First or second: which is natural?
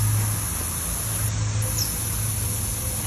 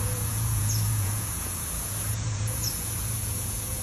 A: first